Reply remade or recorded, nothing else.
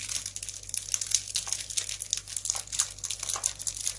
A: recorded